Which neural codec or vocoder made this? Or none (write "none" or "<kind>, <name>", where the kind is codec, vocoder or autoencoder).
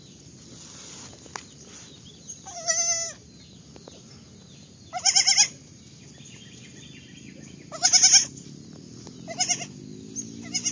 none